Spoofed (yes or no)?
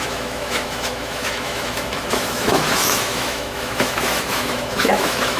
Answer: yes